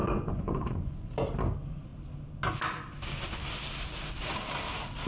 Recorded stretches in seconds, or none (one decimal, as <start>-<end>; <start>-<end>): 1.1-5.1